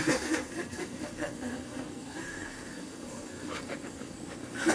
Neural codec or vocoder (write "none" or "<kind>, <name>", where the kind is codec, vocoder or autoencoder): codec, SNAC